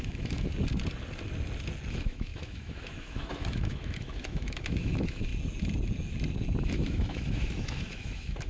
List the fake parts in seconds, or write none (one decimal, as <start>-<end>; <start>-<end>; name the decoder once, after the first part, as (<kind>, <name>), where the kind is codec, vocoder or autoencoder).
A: 0.0-0.5 (autoencoder, DAC-VAE); 1.9-5.3; 6.6-8.5